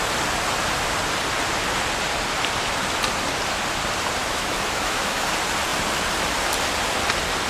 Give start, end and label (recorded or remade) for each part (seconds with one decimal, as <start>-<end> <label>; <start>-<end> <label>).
0.0-4.2 recorded; 4.2-5.2 remade; 5.2-7.5 recorded